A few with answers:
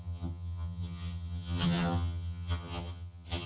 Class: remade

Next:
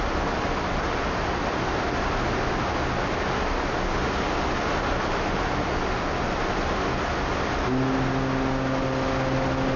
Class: recorded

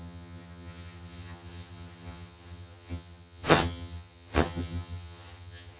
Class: remade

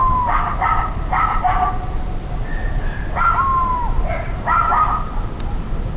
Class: recorded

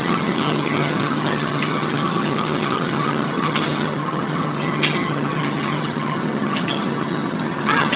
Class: remade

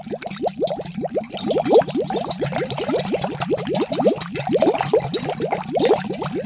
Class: recorded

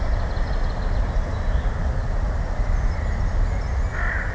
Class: recorded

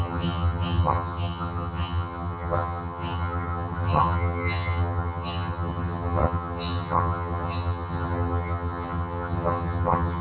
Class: remade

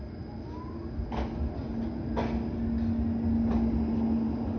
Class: recorded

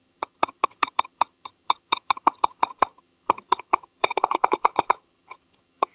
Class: remade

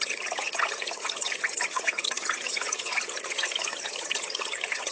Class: remade